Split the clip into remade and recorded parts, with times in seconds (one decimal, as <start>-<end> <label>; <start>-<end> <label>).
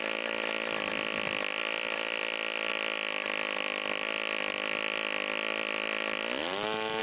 0.0-7.0 recorded